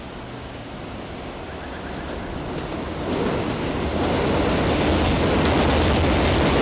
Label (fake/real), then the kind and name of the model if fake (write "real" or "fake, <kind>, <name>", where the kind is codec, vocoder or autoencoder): real